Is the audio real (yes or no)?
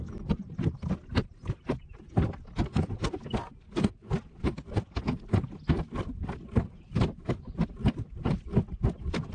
yes